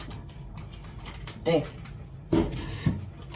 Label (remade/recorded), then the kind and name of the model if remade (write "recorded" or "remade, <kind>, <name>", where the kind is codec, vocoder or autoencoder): remade, vocoder, BigVGAN v2